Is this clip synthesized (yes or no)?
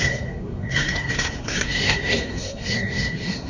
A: yes